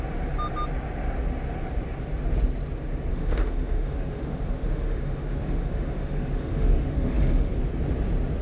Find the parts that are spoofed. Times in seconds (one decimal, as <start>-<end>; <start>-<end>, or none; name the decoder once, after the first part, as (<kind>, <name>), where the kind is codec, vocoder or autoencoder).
3.1-7.5 (autoencoder, DAC-VAE)